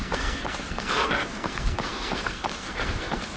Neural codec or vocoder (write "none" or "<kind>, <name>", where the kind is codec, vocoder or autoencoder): codec, SNAC